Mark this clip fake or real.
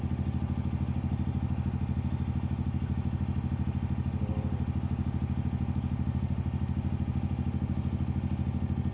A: real